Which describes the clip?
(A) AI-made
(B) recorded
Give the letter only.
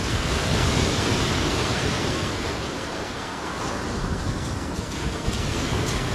A